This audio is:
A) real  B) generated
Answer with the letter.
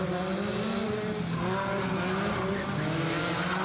A